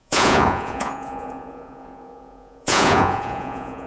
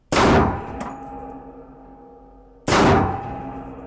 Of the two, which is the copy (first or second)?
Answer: first